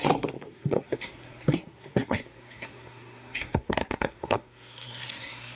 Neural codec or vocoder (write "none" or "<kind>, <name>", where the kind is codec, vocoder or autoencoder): codec, SNAC